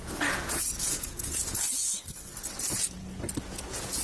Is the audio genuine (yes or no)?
no